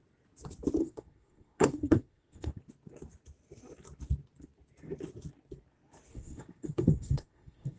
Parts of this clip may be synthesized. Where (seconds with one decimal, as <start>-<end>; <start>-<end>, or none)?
0.8-2.6; 6.1-7.8